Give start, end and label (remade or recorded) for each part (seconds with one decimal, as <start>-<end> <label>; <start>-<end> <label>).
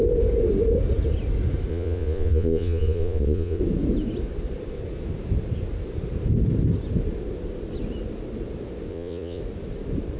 0.0-1.7 recorded; 1.7-3.6 remade; 3.6-8.9 recorded; 8.9-9.4 remade; 9.4-10.2 recorded